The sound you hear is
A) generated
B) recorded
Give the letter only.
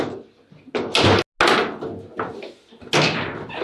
B